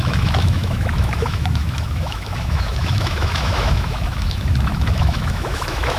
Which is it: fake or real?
fake